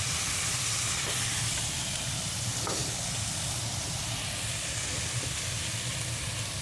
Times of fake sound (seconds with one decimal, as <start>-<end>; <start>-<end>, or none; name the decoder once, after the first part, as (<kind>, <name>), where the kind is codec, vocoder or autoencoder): 0.0-2.8 (vocoder, BigVGAN v2); 3.4-6.6